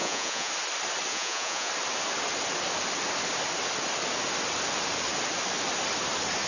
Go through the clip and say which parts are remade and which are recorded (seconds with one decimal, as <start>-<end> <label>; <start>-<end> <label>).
0.0-0.5 remade; 0.5-1.1 recorded; 1.1-1.7 remade; 1.7-6.5 recorded